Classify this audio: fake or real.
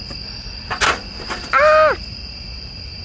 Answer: real